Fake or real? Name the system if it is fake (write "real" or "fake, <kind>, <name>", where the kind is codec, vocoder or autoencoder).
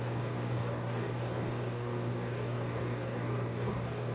fake, codec, DAC